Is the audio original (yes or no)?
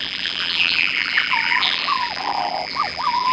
no